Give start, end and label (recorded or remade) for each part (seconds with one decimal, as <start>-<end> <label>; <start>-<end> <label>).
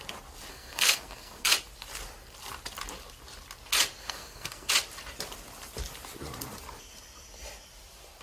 0.0-0.5 recorded; 0.5-1.5 remade; 1.5-4.0 recorded; 4.0-4.7 remade; 4.7-8.2 recorded